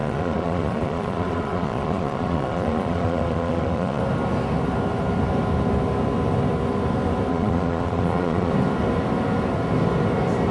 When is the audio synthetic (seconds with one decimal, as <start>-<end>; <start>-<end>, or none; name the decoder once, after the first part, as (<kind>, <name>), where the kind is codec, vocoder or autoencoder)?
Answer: 0.0-4.0 (vocoder, Vocos); 7.3-8.5